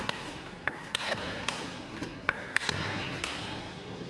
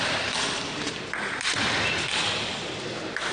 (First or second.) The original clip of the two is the second